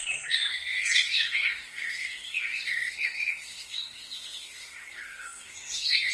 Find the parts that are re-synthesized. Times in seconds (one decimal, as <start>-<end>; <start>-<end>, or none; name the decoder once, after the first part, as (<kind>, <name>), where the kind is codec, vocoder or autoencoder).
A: 0.0-6.1 (codec, SNAC)